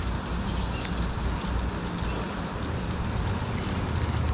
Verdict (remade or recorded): recorded